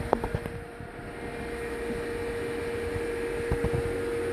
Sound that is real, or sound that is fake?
real